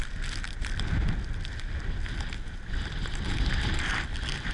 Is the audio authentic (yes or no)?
yes